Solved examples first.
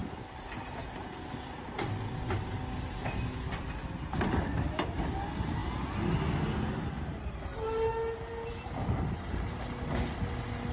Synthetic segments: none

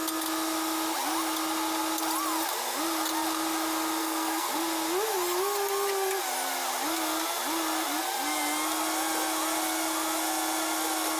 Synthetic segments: 4.0-4.6 (codec, SNAC)

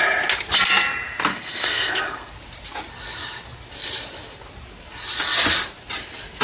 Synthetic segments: 1.3-2.3 (codec, SNAC)

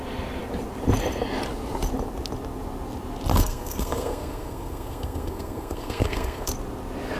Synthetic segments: 3.3-6.5 (codec, SNAC)